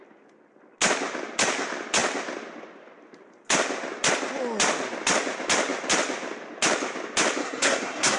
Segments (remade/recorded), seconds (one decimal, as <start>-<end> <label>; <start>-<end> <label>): 0.0-7.4 recorded; 7.4-8.2 remade